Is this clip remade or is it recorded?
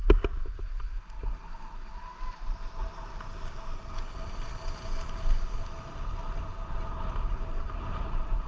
recorded